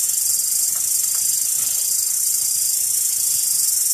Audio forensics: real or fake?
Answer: real